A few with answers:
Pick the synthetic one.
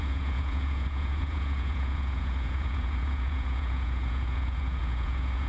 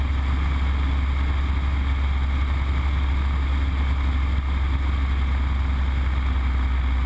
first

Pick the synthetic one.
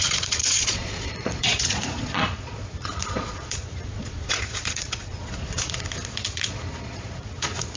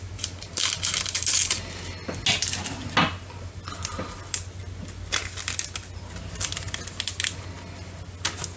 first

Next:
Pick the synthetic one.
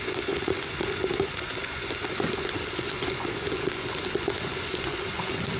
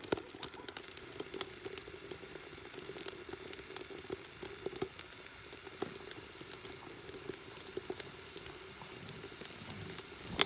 first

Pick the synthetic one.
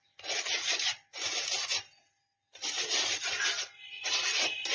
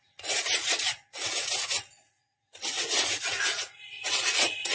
second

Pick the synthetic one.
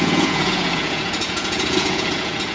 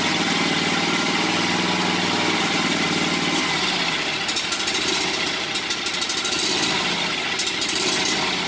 first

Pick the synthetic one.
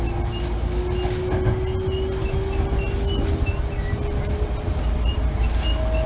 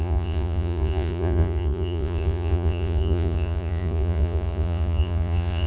second